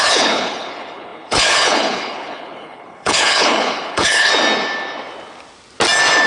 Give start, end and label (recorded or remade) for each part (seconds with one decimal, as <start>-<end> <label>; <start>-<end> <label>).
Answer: 0.0-4.3 remade; 4.3-6.3 recorded